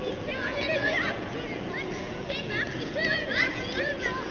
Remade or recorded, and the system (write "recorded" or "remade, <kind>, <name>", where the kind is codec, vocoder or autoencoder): remade, vocoder, Vocos